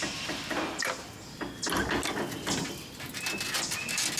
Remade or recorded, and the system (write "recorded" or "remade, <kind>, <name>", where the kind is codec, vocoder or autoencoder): recorded